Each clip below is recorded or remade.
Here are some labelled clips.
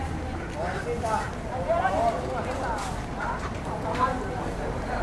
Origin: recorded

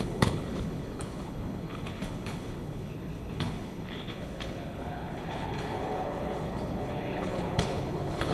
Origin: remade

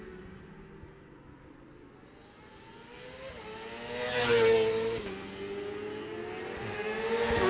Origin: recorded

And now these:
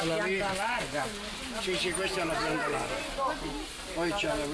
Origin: recorded